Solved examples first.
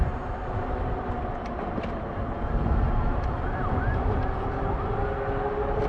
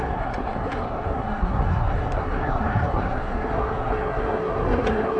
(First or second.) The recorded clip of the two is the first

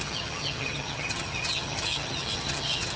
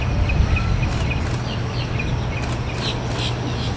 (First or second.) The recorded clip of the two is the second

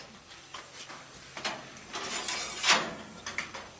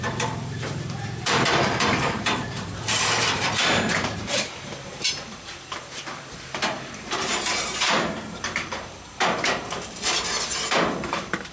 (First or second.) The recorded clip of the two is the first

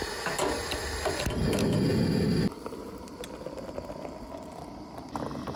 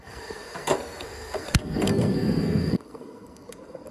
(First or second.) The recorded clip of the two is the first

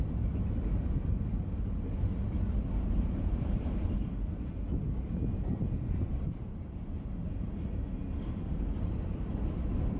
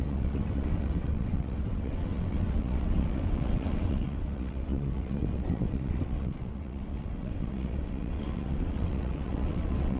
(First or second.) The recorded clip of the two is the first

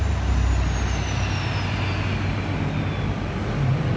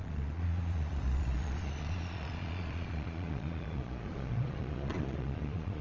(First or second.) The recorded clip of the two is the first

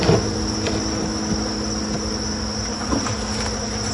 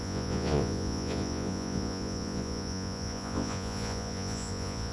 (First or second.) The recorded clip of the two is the first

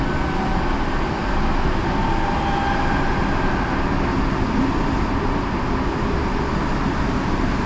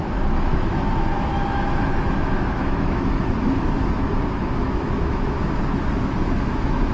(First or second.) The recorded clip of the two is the first